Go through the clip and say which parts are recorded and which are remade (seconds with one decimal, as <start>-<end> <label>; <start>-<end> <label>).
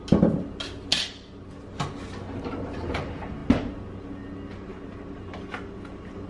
0.0-6.3 recorded